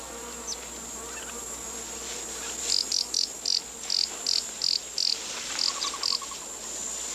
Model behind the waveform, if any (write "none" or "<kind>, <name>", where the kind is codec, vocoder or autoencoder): none